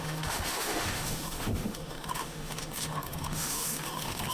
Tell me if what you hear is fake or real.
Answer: fake